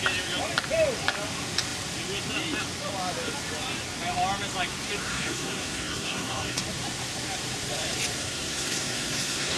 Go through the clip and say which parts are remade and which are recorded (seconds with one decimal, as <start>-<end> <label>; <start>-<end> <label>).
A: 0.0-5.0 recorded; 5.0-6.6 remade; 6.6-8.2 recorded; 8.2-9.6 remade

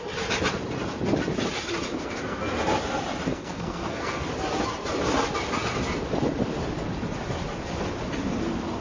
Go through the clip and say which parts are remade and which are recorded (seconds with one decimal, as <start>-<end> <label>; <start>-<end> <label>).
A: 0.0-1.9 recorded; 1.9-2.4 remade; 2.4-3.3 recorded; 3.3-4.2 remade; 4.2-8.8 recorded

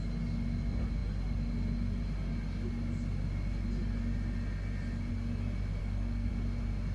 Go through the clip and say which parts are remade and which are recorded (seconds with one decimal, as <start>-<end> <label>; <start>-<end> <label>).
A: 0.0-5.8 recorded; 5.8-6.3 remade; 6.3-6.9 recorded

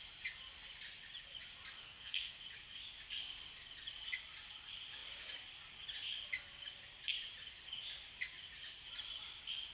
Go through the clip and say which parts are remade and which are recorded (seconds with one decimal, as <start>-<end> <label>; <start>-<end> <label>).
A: 0.0-1.8 recorded; 1.8-2.4 remade; 2.4-9.7 recorded